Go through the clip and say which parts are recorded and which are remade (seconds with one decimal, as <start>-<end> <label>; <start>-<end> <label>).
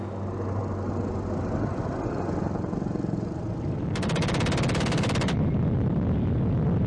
0.0-6.9 recorded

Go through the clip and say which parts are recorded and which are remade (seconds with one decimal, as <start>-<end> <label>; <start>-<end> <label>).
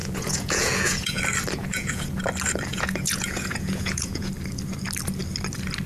0.0-1.2 remade; 1.2-1.6 recorded; 1.6-2.2 remade; 2.2-2.7 recorded; 2.7-4.3 remade; 4.3-5.9 recorded